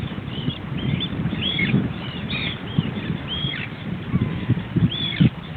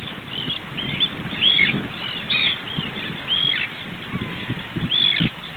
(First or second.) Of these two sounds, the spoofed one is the first